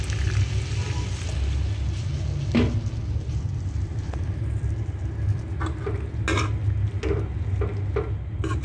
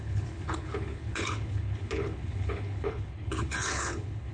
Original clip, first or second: first